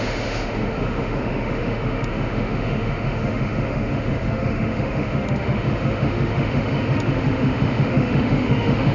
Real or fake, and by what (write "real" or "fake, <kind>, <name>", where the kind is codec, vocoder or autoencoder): fake, autoencoder, DAC-VAE